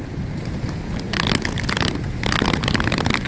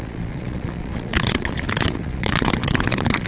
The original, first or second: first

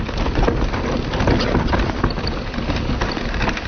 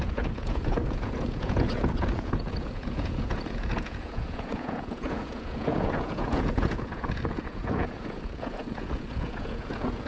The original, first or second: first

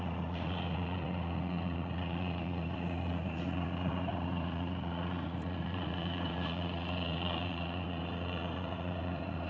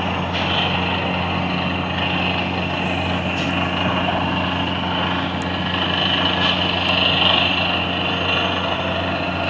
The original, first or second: second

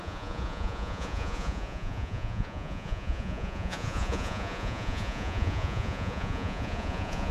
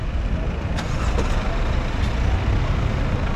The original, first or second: second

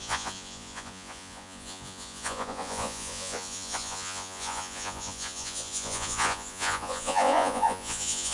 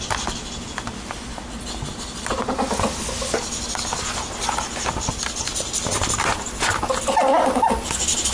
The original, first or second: second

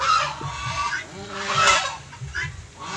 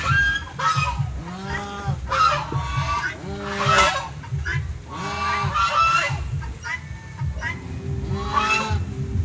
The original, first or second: second